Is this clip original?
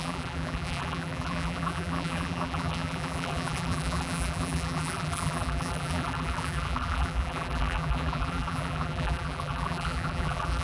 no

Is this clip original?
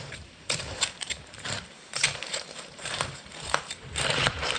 no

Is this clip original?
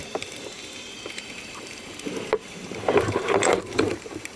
no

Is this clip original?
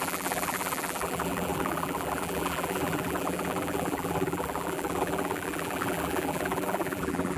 no